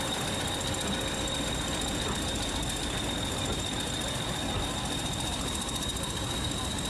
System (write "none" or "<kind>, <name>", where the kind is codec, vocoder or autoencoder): none